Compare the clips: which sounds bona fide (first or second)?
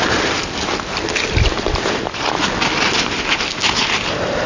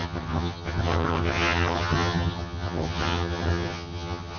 first